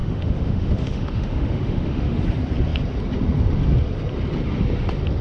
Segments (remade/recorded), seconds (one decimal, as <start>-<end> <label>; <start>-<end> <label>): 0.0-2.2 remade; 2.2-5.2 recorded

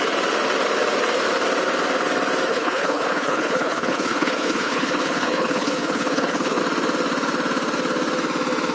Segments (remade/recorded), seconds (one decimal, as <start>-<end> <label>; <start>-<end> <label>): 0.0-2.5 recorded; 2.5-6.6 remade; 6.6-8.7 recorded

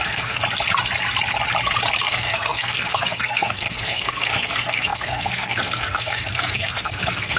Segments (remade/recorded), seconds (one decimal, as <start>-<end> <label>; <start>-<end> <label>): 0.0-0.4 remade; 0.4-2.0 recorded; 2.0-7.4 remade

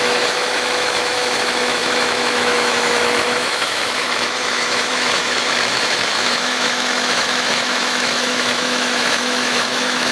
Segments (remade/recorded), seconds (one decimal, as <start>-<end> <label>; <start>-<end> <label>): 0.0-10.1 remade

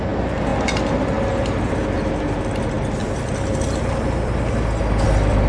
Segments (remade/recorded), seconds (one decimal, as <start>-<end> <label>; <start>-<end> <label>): 0.0-5.5 recorded

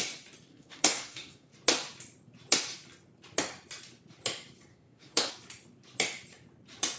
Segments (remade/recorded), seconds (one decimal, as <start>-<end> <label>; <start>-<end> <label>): 0.0-0.5 recorded; 0.5-1.5 remade; 1.5-4.7 recorded; 4.7-5.3 remade; 5.3-7.0 recorded